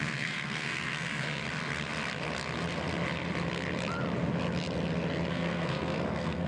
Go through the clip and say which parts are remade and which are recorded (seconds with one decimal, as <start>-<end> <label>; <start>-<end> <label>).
0.0-1.4 remade; 1.4-5.3 recorded; 5.3-6.5 remade